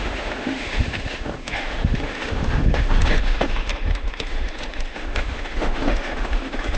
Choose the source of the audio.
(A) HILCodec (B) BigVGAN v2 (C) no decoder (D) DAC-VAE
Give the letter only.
D